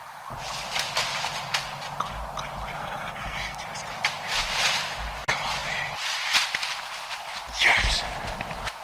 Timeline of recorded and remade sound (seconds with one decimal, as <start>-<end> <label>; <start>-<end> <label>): 0.0-2.7 recorded; 2.7-3.6 remade; 3.6-8.8 recorded